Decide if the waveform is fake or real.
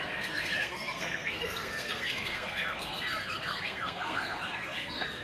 fake